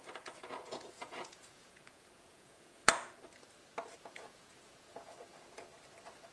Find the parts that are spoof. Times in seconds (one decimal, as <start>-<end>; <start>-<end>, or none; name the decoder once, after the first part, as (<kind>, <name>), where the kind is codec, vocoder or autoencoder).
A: 0.0-2.9 (vocoder, Vocos); 4.0-5.7

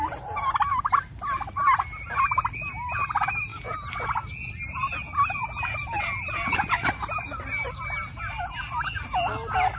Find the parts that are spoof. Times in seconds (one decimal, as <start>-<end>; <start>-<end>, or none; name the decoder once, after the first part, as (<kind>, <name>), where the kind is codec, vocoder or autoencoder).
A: none

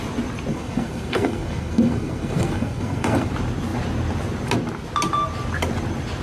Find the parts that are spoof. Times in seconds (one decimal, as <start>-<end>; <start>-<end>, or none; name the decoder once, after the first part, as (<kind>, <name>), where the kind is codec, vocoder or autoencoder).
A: 0.5-3.3 (codec, SNAC)

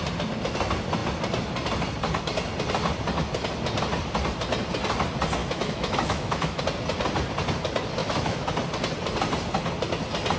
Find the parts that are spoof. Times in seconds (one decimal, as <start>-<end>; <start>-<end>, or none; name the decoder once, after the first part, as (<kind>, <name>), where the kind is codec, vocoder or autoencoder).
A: 5.4-6.6 (autoencoder, DAC-VAE); 8.0-8.5

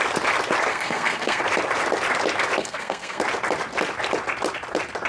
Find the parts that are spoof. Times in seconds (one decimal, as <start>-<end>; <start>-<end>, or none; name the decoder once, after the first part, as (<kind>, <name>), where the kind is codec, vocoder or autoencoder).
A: 0.7-1.4 (codec, SNAC); 2.6-3.2

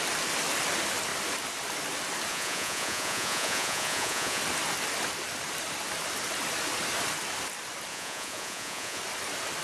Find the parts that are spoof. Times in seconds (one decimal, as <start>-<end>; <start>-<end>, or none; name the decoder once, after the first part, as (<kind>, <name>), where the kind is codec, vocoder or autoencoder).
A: 2.3-4.4 (vocoder, Vocos); 7.9-9.0